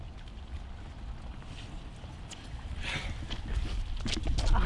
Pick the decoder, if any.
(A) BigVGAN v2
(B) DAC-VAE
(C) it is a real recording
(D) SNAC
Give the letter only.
C